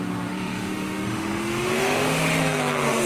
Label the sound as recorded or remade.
remade